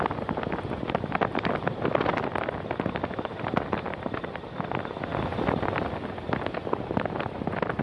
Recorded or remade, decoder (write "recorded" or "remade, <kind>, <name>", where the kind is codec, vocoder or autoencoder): recorded